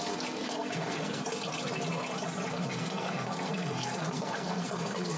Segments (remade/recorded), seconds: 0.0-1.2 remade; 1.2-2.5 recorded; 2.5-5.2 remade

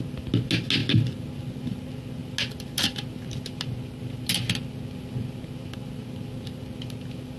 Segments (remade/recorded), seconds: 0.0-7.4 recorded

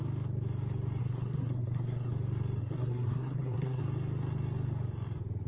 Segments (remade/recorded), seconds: 0.0-1.0 recorded; 1.0-2.1 remade; 2.1-2.6 recorded; 2.6-3.8 remade; 3.8-5.5 recorded